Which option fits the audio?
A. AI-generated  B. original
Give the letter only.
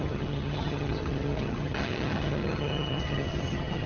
A